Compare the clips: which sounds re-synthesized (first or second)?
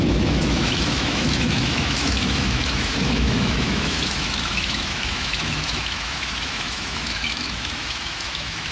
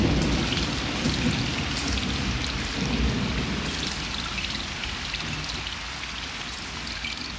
first